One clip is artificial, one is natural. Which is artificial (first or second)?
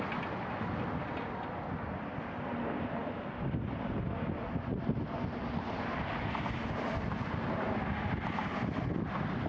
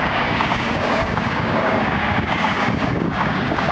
second